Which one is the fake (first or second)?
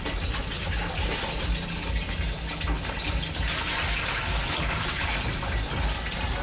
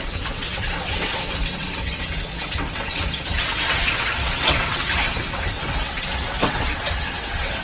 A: second